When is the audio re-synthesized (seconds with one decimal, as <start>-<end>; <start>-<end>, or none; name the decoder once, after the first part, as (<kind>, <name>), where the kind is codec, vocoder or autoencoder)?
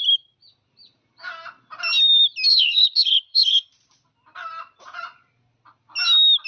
2.5-3.7 (codec, HILCodec)